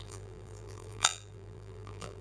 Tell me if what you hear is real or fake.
fake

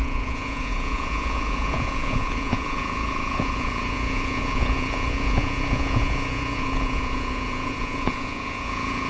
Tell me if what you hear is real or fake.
fake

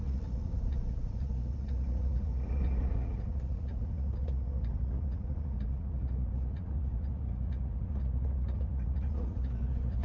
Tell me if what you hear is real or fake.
fake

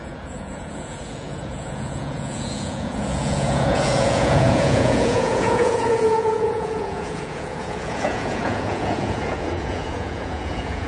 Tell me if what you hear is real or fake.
fake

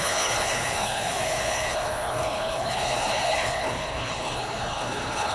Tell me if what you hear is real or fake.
fake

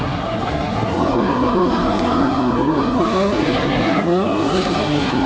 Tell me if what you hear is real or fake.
fake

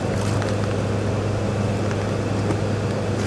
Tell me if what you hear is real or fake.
real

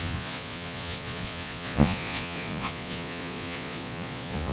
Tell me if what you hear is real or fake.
fake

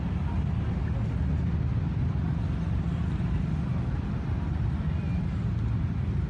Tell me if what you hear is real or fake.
real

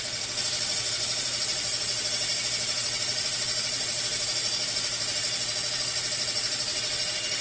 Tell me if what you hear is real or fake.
fake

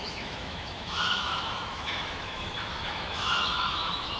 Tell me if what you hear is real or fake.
fake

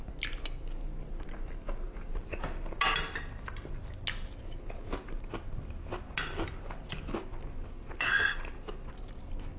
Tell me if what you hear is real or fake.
real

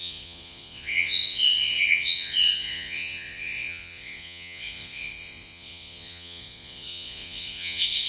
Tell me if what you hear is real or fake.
fake